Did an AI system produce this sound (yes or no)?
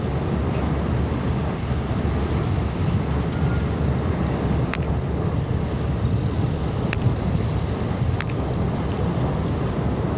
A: no